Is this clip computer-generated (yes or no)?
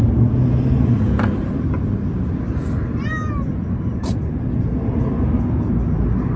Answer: no